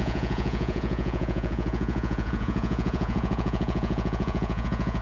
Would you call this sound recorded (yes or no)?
no